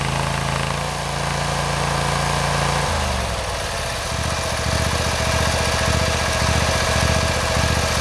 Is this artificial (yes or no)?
no